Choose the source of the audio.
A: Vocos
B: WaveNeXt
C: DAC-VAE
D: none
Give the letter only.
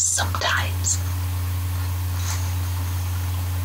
D